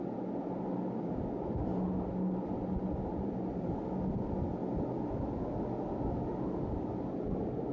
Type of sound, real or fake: real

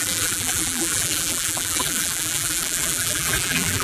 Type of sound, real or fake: fake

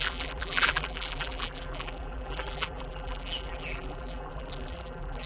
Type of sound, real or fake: fake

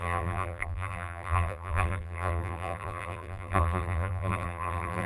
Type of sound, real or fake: fake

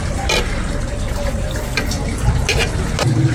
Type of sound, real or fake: real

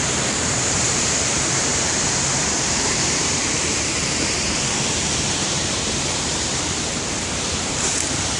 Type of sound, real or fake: fake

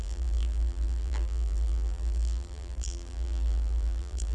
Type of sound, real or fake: fake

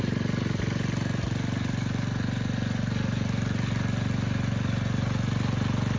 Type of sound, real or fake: real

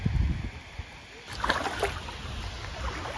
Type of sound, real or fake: real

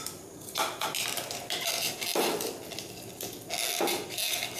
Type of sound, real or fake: real